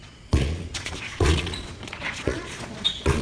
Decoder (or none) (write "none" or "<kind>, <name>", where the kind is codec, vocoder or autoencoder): vocoder, Vocos